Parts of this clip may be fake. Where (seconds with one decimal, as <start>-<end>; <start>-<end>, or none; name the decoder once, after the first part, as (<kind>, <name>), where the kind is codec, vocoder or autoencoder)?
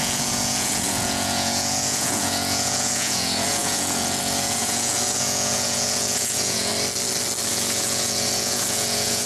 0.0-6.7 (vocoder, Vocos); 7.5-9.3